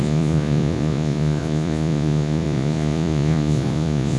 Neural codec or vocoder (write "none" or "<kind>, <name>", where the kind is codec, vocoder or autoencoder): vocoder, Vocos